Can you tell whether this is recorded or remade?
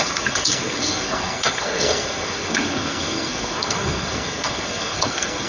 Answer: remade